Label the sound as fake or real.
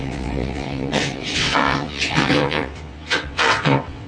fake